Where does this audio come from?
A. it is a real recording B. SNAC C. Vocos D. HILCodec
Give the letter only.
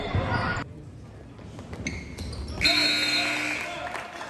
A